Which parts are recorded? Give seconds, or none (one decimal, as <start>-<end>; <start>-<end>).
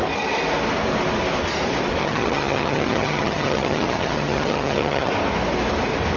0.0-2.0; 5.1-6.2